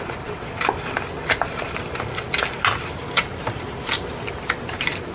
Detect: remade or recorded recorded